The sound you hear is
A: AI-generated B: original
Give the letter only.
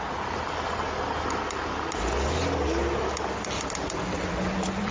B